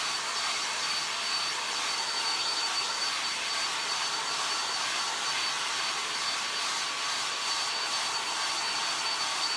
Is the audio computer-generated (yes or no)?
yes